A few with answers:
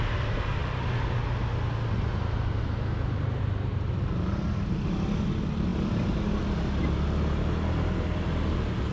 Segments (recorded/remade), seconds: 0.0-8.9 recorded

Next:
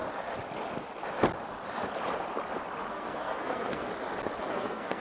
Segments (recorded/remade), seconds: 0.0-2.9 recorded; 2.9-3.9 remade; 3.9-4.5 recorded; 4.5-5.0 remade

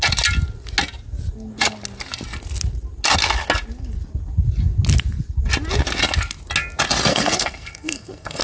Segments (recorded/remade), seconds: 0.0-7.1 recorded; 7.1-8.4 remade

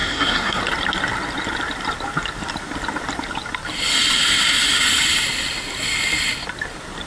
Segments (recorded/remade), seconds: 0.0-0.6 remade; 0.6-7.1 recorded